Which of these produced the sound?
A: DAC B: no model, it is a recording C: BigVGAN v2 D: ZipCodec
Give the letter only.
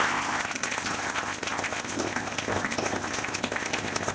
D